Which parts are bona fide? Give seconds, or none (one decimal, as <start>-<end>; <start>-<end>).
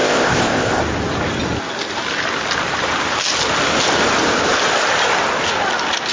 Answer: 0.8-6.1